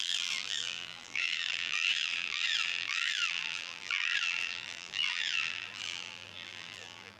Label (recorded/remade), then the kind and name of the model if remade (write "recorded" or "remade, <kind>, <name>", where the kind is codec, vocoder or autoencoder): remade, vocoder, BigVGAN v2